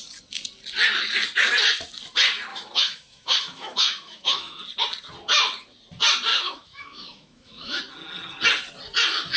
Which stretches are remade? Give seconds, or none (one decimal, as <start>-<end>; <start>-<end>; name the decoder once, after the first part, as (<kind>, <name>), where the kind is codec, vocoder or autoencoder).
2.5-4.6 (autoencoder, DAC-VAE); 6.3-7.8